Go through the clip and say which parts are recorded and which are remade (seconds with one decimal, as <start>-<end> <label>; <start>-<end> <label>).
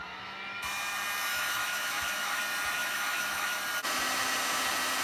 0.0-1.3 recorded; 1.3-2.4 remade; 2.4-2.8 recorded; 2.8-3.6 remade; 3.6-5.0 recorded